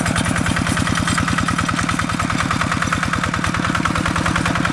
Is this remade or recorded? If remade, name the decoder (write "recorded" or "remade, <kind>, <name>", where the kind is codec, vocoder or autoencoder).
recorded